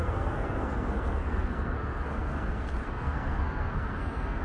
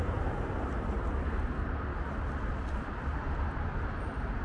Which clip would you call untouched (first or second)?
second